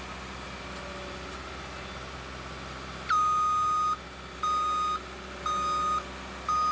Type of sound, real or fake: real